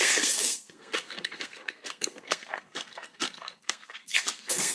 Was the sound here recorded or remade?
remade